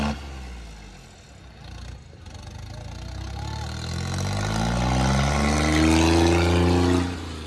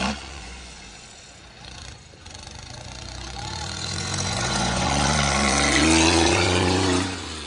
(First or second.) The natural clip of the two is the first